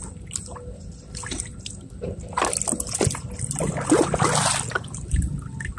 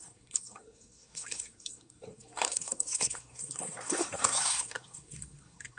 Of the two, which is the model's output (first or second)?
second